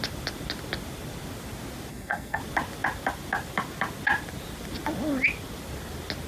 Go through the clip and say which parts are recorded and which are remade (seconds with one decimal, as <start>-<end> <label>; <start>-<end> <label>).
0.0-1.9 recorded; 1.9-2.4 remade; 2.4-6.3 recorded